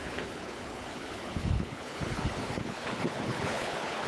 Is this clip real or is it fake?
fake